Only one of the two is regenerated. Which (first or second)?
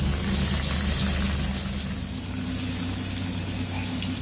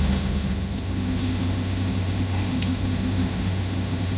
second